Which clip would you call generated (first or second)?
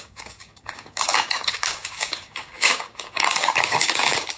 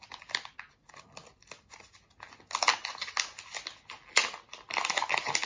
first